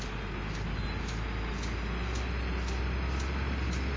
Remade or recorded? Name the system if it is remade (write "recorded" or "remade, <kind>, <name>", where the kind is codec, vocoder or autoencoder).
recorded